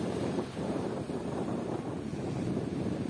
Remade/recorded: remade